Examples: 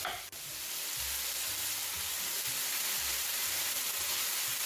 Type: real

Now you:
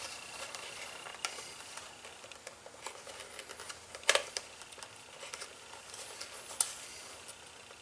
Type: real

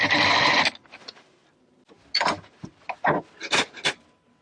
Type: real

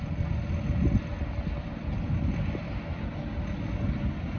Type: real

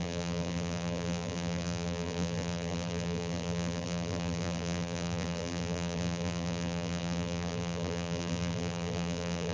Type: fake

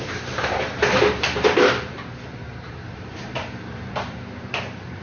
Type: fake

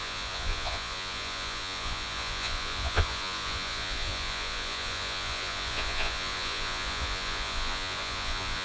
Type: fake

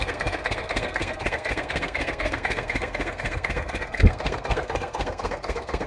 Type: fake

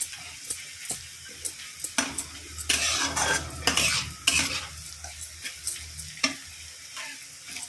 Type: real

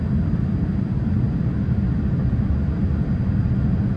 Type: real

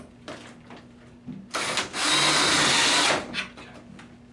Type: real